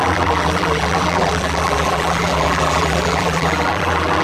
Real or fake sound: fake